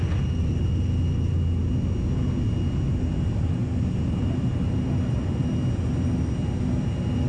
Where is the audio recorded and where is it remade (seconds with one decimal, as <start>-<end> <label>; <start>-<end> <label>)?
0.0-3.6 recorded; 3.6-5.4 remade; 5.4-7.3 recorded